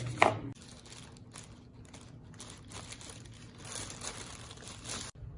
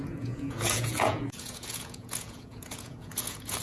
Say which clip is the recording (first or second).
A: first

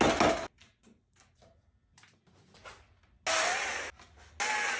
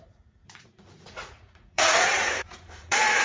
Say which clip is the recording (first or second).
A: first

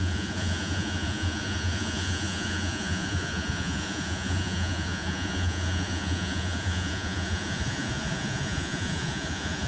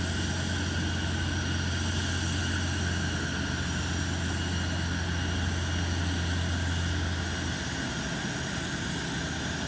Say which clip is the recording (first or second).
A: second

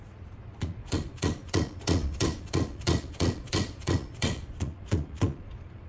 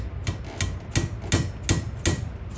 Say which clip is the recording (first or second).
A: second